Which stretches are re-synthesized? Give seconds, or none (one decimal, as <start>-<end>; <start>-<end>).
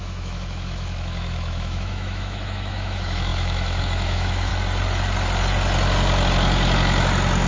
0.0-4.5